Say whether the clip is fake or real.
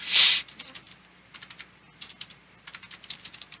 real